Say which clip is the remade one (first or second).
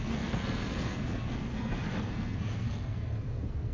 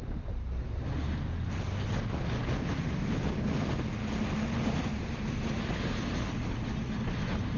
first